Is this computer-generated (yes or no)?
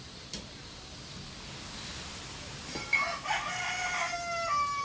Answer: no